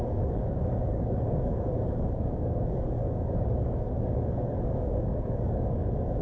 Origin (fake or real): fake